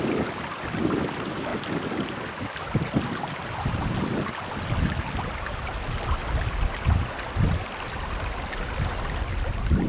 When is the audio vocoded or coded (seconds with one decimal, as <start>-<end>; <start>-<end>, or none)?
none